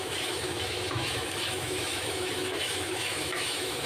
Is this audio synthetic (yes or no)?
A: yes